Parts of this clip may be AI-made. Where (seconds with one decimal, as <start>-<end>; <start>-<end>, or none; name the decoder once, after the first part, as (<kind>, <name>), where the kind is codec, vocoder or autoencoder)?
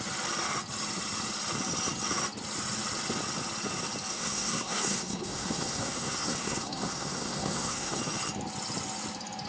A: 4.1-8.0 (codec, SNAC)